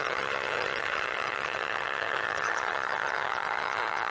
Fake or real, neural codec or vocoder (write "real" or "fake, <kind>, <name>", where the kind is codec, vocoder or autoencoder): fake, vocoder, HiFi-GAN